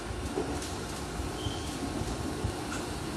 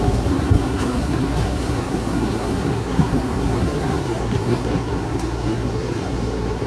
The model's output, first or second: second